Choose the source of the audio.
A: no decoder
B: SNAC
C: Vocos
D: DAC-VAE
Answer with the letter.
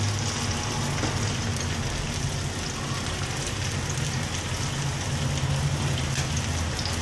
A